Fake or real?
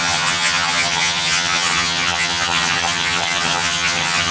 fake